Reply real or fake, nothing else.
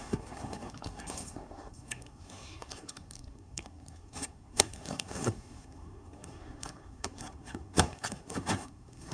fake